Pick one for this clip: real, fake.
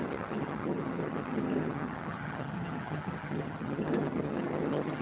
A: fake